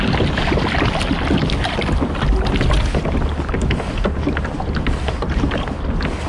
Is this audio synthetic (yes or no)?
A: no